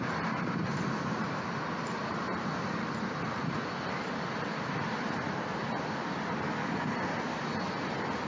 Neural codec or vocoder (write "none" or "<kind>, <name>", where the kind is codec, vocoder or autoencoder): none